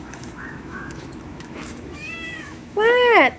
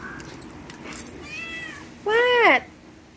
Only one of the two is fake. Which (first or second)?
first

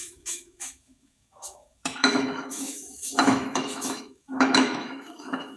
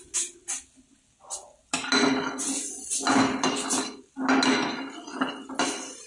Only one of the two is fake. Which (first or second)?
first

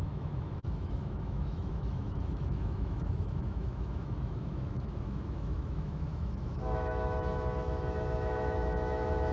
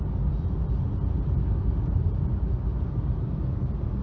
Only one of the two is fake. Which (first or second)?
first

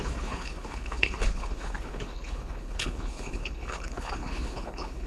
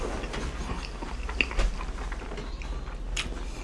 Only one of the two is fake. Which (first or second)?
first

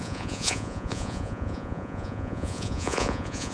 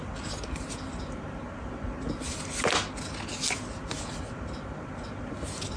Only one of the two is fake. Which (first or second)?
first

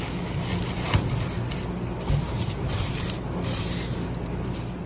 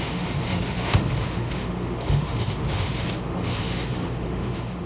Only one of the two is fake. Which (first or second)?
second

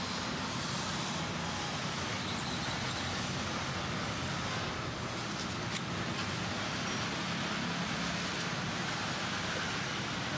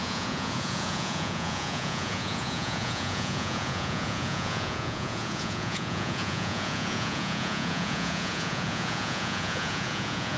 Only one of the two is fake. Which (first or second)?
second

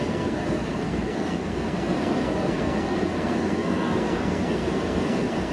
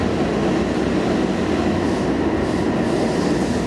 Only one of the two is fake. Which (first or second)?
first